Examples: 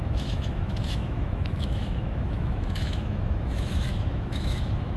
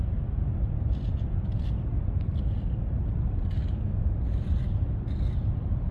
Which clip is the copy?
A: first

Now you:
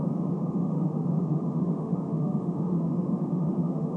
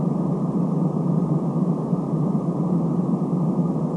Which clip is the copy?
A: first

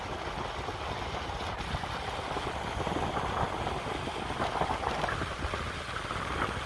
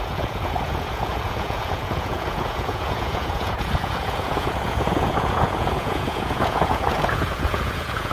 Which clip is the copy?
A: second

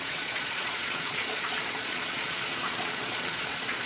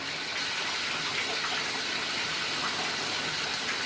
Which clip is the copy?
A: first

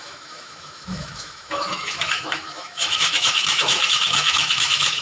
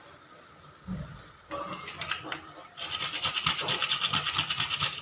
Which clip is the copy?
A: first